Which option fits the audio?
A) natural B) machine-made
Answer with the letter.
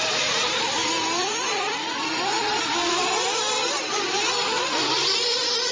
B